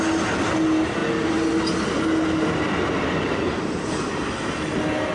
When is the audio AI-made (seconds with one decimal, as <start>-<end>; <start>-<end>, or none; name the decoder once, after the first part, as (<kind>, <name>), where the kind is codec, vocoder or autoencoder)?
none